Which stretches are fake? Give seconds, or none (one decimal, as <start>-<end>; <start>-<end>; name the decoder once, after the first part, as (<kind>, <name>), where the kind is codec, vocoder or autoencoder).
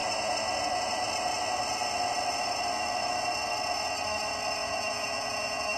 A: 4.6-5.8 (vocoder, Vocos)